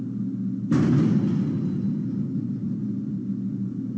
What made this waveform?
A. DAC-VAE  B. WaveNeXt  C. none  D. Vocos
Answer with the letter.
C